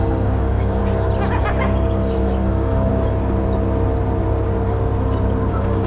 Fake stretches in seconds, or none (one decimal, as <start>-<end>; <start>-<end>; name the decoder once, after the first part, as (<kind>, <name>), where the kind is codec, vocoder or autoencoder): 0.0-0.8 (codec, DAC); 1.3-2.9; 5.5-5.9